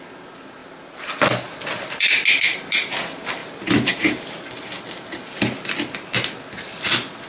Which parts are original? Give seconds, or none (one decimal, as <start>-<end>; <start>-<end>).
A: 0.0-3.4; 4.7-7.3